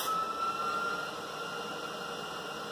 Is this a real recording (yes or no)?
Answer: yes